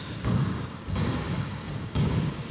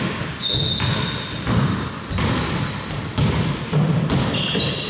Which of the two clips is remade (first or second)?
first